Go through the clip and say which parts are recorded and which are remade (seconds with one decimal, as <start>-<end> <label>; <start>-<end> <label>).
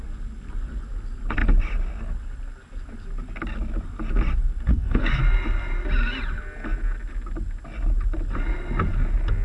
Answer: 0.0-4.7 recorded; 4.7-5.2 remade; 5.2-9.4 recorded